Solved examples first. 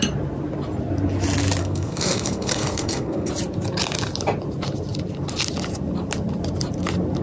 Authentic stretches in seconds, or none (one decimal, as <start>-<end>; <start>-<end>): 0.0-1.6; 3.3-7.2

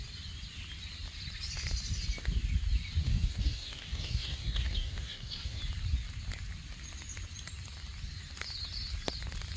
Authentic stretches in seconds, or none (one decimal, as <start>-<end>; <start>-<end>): 0.0-3.0; 5.6-9.6

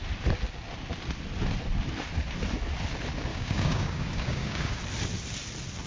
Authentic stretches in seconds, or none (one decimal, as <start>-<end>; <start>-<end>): 0.0-3.3; 4.8-5.9